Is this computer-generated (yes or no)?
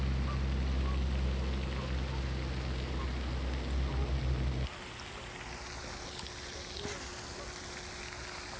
no